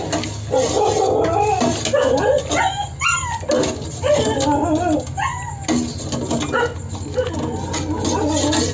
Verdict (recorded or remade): recorded